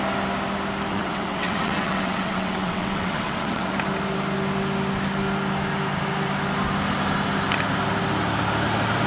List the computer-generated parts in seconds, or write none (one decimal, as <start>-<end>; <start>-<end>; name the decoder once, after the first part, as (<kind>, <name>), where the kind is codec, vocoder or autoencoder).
0.9-3.7 (vocoder, WaveNeXt)